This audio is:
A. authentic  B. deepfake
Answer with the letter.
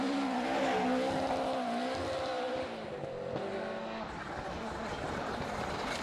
A